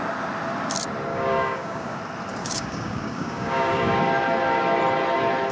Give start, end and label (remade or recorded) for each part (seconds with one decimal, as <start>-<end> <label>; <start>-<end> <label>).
0.0-1.1 recorded; 1.1-2.0 remade; 2.0-2.4 recorded; 2.4-4.0 remade; 4.0-5.5 recorded